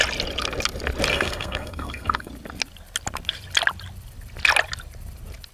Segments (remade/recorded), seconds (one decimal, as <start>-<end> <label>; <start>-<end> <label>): 0.0-1.1 recorded; 1.1-2.3 remade; 2.3-5.5 recorded